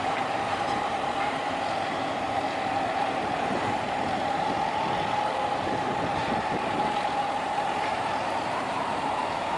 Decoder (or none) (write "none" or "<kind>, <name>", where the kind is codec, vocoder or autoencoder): vocoder, BigVGAN v2